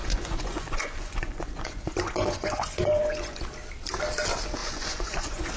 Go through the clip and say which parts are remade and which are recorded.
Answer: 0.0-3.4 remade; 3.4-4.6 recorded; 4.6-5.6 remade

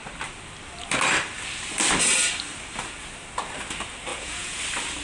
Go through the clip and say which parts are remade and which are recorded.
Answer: 0.0-4.1 recorded; 4.1-4.6 remade; 4.6-5.0 recorded